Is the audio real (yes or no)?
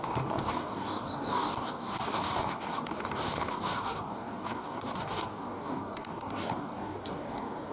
no